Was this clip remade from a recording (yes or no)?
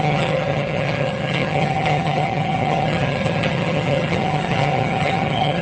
yes